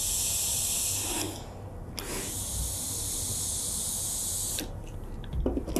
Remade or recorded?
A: recorded